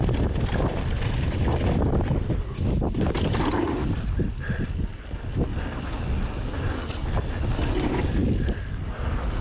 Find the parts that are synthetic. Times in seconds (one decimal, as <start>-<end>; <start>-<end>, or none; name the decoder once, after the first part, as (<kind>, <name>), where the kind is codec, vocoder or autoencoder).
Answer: none